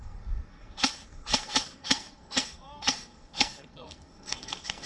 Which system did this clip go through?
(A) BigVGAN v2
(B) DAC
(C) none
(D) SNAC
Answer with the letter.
D